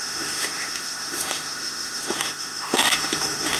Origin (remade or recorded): remade